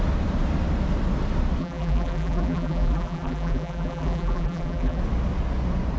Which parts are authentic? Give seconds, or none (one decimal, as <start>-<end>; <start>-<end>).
0.0-1.6; 5.0-6.0